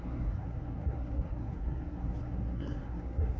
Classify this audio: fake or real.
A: fake